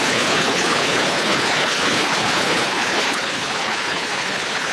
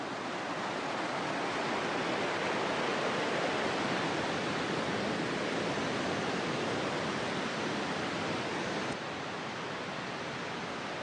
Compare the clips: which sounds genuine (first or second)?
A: second